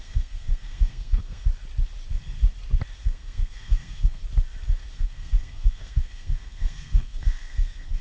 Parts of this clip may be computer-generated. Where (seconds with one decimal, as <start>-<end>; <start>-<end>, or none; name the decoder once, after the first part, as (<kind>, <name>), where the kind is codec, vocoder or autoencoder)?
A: 0.0-1.4 (codec, SNAC); 3.0-4.2; 4.9-8.0